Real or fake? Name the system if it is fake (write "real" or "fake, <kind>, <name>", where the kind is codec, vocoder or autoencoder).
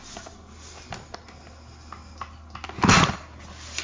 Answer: real